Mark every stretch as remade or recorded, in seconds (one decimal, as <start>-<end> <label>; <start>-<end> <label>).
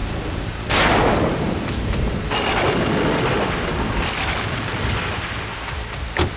0.0-6.4 recorded